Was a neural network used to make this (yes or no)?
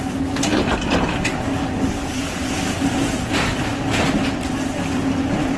no